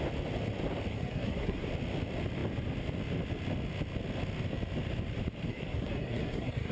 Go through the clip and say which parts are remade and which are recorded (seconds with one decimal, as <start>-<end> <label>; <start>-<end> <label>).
0.0-0.9 recorded; 0.9-1.7 remade; 1.7-5.5 recorded; 5.5-6.7 remade